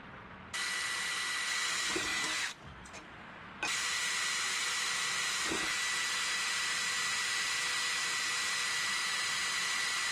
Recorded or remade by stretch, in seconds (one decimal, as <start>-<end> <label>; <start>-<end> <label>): 0.0-10.1 recorded

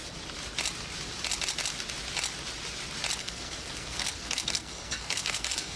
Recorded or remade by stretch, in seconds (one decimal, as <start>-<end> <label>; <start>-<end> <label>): 0.0-3.2 recorded; 3.2-5.8 remade

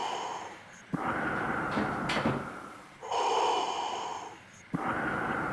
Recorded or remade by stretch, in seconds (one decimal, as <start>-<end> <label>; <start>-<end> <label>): 0.0-5.5 recorded

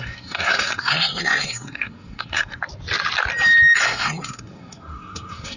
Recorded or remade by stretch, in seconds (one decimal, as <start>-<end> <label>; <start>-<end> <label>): 0.0-2.6 remade; 2.6-3.8 recorded; 3.8-5.6 remade

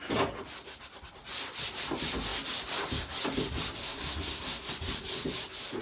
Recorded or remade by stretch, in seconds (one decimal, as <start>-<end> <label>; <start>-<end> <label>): 0.0-3.8 recorded; 3.8-4.7 remade; 4.7-5.8 recorded

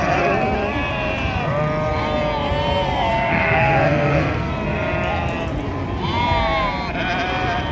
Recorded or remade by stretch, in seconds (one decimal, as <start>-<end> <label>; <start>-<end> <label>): 0.0-3.1 recorded; 3.1-4.5 remade; 4.5-7.7 recorded

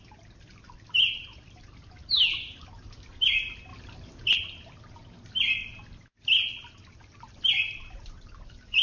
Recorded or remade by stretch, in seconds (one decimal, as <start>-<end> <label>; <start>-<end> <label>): 0.0-8.8 recorded